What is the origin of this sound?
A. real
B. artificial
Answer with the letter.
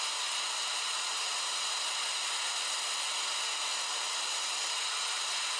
A